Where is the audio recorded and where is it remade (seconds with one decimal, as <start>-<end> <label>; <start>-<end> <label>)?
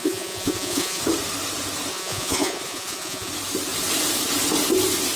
0.0-1.0 remade; 1.0-1.9 recorded; 1.9-3.3 remade; 3.3-5.2 recorded